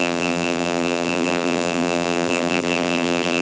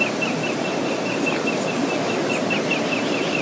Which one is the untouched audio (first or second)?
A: second